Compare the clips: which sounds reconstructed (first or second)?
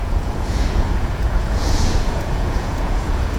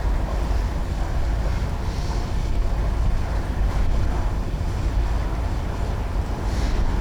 first